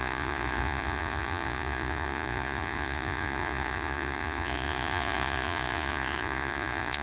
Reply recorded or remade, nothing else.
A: remade